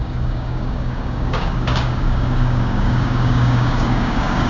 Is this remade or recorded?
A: remade